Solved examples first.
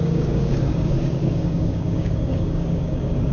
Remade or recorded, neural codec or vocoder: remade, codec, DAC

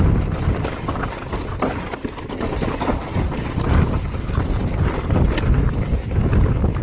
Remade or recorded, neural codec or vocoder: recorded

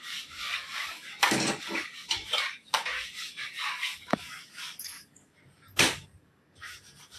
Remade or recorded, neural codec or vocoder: remade, codec, DAC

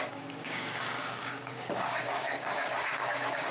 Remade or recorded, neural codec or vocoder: remade, codec, DAC